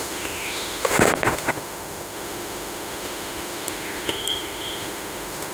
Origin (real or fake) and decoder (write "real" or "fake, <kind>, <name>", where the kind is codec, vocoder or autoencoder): fake, autoencoder, DAC-VAE